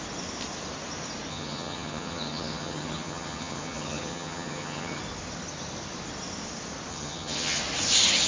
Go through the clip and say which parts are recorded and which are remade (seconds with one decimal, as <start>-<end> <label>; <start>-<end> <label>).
0.0-1.3 recorded; 1.3-5.0 remade; 5.0-6.9 recorded; 6.9-7.6 remade; 7.6-8.3 recorded

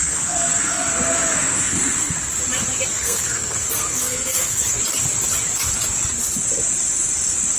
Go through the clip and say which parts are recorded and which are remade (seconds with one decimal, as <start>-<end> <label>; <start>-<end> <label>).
0.0-2.1 remade; 2.1-2.9 recorded; 2.9-4.8 remade; 4.8-7.6 recorded

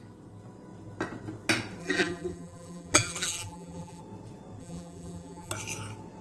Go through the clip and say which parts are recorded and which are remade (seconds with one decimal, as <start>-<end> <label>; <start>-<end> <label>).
0.0-1.8 recorded; 1.8-4.0 remade; 4.0-4.6 recorded; 4.6-5.5 remade; 5.5-6.2 recorded

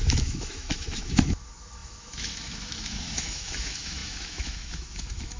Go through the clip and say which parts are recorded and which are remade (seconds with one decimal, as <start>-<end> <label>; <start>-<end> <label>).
0.0-5.4 remade

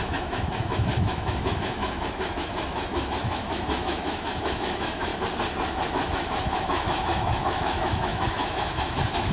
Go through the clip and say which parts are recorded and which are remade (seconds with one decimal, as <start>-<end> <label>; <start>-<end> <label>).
0.0-5.1 remade; 5.1-5.9 recorded; 5.9-9.3 remade

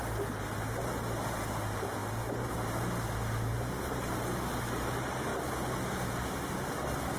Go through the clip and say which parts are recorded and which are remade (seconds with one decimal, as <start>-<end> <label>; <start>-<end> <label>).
0.0-7.2 recorded

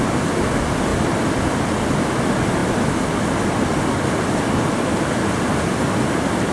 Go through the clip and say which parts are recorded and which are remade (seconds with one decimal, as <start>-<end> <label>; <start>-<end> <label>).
0.0-6.5 recorded

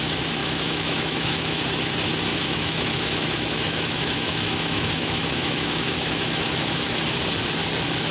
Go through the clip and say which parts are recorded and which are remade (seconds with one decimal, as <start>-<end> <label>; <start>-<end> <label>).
0.0-0.4 recorded; 0.4-1.6 remade; 1.6-2.3 recorded; 2.3-6.9 remade; 6.9-8.1 recorded